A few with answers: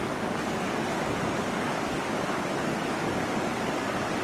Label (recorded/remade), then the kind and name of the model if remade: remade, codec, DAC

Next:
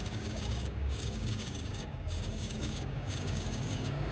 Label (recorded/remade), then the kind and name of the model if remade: remade, codec, DAC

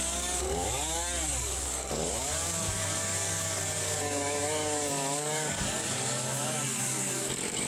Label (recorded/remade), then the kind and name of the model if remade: remade, codec, DAC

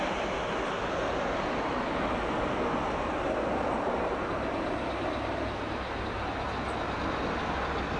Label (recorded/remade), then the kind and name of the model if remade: recorded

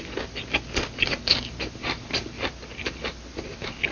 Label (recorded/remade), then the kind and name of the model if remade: recorded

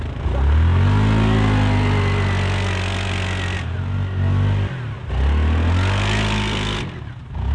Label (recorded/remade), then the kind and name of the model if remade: recorded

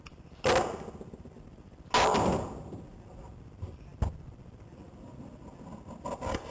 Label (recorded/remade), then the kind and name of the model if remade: recorded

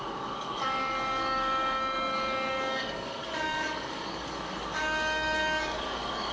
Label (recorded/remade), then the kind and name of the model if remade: remade, codec, DAC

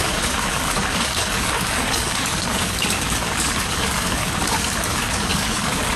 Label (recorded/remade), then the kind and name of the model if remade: remade, codec, DAC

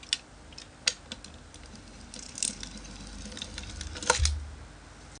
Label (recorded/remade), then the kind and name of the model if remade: recorded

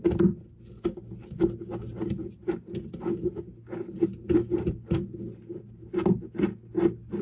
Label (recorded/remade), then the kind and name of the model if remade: recorded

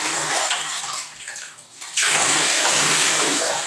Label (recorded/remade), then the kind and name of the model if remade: remade, codec, DAC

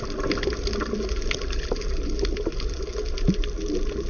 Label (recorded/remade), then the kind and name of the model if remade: recorded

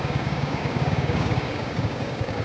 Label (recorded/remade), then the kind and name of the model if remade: remade, codec, DAC